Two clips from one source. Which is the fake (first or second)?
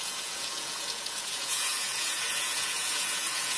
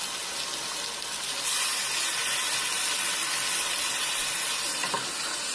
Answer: first